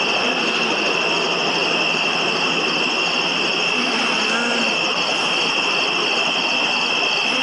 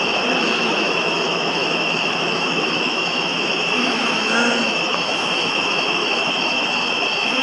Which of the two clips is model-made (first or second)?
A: second